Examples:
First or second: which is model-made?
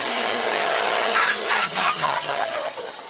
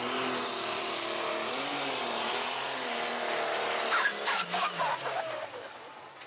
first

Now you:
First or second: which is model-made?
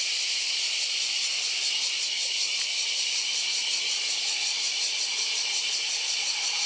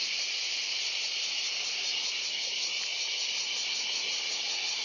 first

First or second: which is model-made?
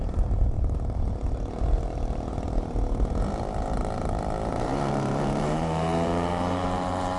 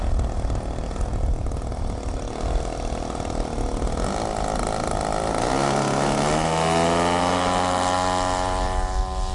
first